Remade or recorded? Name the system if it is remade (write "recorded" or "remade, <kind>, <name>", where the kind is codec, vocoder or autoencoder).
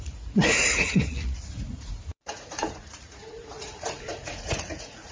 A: remade, vocoder, Vocos